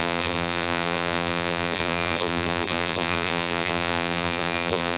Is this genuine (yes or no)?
no